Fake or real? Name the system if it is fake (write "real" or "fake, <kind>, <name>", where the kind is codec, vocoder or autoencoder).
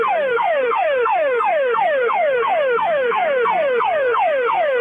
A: fake, codec, SNAC